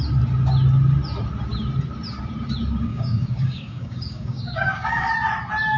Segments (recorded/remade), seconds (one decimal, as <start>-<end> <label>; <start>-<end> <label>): 0.0-2.9 recorded; 2.9-5.1 remade; 5.1-5.8 recorded